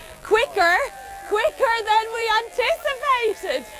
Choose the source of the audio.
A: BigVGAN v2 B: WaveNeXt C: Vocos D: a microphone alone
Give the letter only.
A